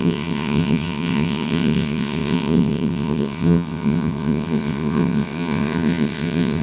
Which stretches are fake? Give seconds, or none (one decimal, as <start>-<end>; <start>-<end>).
0.0-6.6